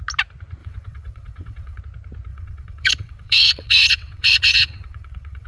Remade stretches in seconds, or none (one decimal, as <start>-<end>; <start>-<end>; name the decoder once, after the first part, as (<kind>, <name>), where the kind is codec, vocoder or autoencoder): 0.6-1.8 (vocoder, WaveNeXt); 2.3-5.5